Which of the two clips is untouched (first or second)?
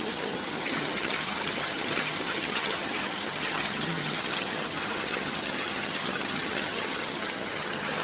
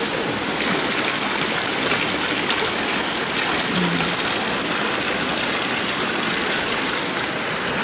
second